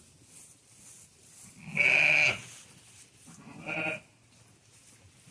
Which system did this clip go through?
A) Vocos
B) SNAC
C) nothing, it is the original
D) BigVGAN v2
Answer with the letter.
C